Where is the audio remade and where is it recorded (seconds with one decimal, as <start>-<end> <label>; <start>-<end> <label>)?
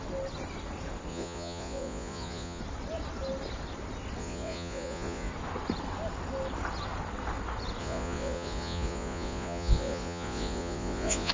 0.0-1.1 recorded; 1.1-2.6 remade; 2.6-4.2 recorded; 4.2-5.3 remade; 5.3-7.8 recorded; 7.8-11.3 remade